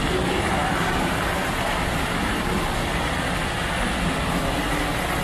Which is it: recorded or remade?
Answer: recorded